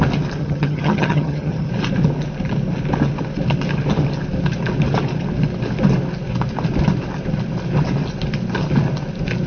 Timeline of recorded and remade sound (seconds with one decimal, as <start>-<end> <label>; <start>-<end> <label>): 0.0-0.4 recorded; 0.4-1.7 remade; 1.7-9.5 recorded